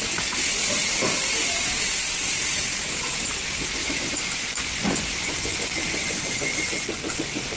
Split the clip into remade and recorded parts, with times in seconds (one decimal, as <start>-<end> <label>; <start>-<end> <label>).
0.0-3.8 recorded; 3.8-7.6 remade